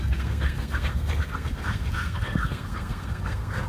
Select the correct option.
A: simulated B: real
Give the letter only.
A